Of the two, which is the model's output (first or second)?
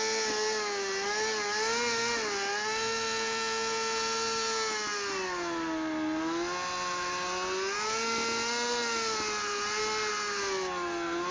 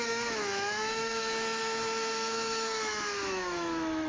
second